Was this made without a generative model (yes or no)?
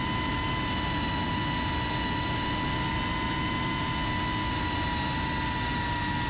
yes